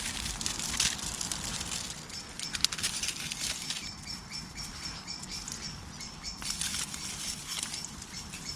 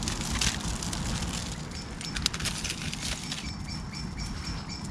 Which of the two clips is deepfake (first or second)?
first